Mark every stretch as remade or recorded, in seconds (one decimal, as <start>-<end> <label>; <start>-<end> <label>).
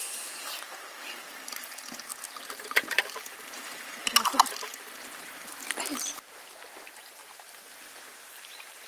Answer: 0.0-2.1 remade; 2.1-3.0 recorded; 3.0-4.7 remade; 4.7-8.3 recorded; 8.3-8.9 remade